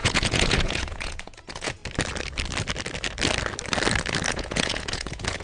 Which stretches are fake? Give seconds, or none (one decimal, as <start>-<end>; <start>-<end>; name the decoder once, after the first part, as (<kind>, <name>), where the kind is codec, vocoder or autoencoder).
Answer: 0.0-1.8 (vocoder, Vocos); 4.3-5.4